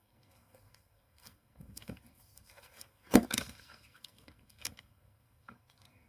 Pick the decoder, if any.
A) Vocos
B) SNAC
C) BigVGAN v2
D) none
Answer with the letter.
B